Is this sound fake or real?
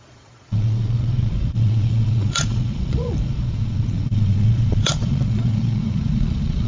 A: fake